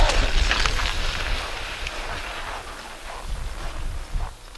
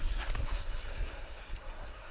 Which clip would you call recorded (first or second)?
first